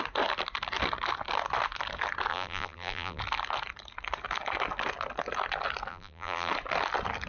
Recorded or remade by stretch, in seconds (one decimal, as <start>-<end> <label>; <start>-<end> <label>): 0.0-2.3 recorded; 2.3-3.2 remade; 3.2-5.9 recorded; 5.9-6.5 remade; 6.5-7.3 recorded